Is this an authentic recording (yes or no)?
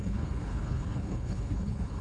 no